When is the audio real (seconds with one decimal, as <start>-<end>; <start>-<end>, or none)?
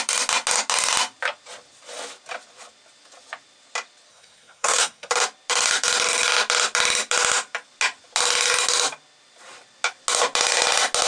0.0-4.1; 5.1-11.1